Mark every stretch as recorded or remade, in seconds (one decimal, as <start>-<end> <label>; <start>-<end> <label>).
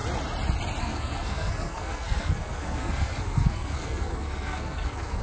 0.0-0.8 recorded; 0.8-5.2 remade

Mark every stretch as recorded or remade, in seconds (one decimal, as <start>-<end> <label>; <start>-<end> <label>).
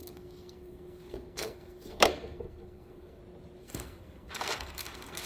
0.0-3.2 remade; 3.2-3.6 recorded; 3.6-5.3 remade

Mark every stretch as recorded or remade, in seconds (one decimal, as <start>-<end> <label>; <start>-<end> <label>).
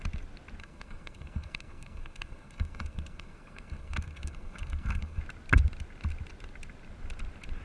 0.0-0.6 recorded; 0.6-5.2 remade; 5.2-7.6 recorded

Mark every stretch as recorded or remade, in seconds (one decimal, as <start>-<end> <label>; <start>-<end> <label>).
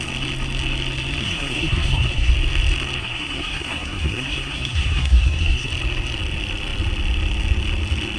0.0-1.2 recorded; 1.2-2.3 remade; 2.3-3.0 recorded; 3.0-5.7 remade; 5.7-8.2 recorded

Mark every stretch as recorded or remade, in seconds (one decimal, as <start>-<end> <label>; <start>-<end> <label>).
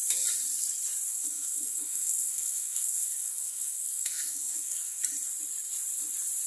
0.0-1.1 recorded; 1.1-5.0 remade; 5.0-6.5 recorded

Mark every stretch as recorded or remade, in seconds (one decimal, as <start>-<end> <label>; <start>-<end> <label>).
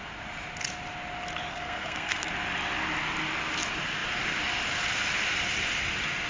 0.0-1.5 recorded; 1.5-2.3 remade; 2.3-6.3 recorded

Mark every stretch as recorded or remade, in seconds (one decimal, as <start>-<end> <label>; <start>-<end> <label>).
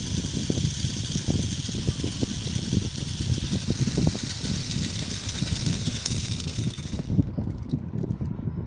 0.0-4.6 recorded; 4.6-8.1 remade; 8.1-8.7 recorded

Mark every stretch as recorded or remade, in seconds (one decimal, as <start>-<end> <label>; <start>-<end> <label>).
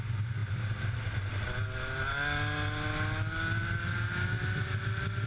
0.0-5.3 recorded